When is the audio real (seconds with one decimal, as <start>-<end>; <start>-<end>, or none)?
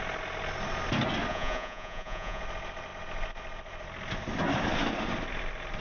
0.0-1.3; 2.4-5.8